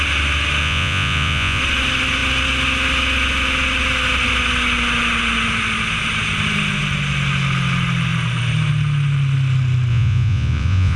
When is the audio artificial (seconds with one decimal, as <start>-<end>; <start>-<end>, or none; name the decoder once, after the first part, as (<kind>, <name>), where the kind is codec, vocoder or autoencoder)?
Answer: 0.6-1.6 (vocoder, Vocos); 9.9-11.0